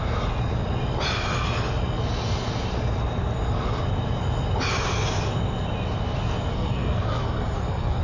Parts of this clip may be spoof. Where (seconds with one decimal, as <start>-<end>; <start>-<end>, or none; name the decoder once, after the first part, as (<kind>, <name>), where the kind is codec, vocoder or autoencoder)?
6.5-8.0 (codec, SNAC)